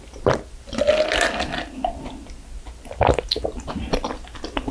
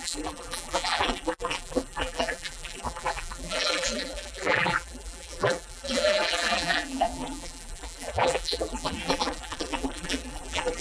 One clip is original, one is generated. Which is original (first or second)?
first